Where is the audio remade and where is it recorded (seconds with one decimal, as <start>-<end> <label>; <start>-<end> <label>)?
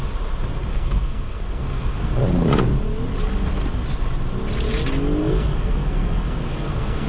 0.0-0.7 recorded; 0.7-2.1 remade; 2.1-5.2 recorded; 5.2-7.1 remade